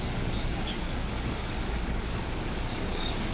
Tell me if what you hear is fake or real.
fake